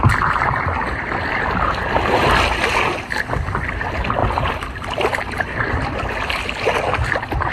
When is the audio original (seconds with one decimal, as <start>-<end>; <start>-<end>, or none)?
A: 0.0-4.2; 6.3-7.5